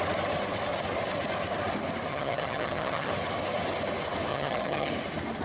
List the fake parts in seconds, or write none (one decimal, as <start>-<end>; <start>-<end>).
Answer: 2.1-3.1; 4.3-4.9